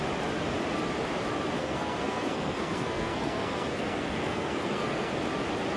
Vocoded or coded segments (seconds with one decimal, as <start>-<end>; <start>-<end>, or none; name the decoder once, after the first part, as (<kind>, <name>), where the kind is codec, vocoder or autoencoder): 1.6-5.1 (codec, SNAC)

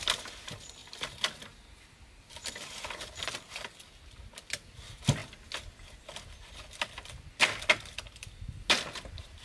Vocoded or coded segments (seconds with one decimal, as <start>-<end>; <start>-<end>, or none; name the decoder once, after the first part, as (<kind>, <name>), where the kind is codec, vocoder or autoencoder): none

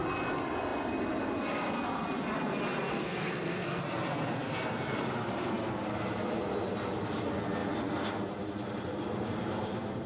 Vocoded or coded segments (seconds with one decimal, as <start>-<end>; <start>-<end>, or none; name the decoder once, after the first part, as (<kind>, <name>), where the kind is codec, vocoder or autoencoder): 2.9-3.8 (codec, SNAC)

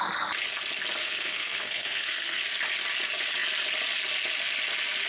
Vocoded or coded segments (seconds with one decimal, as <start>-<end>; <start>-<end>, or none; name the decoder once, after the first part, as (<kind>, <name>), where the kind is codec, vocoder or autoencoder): 1.0-2.4 (codec, SNAC)